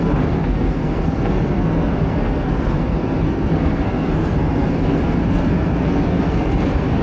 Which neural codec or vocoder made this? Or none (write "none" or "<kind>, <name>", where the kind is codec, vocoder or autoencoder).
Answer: codec, SNAC